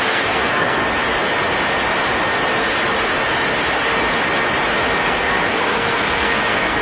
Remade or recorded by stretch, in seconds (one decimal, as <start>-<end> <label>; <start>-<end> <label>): 0.0-0.8 remade; 0.8-4.9 recorded; 4.9-6.8 remade